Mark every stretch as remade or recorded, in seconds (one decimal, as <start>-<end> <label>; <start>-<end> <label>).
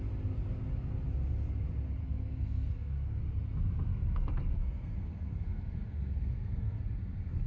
0.0-2.0 recorded; 2.0-3.2 remade; 3.2-3.9 recorded; 3.9-6.8 remade; 6.8-7.5 recorded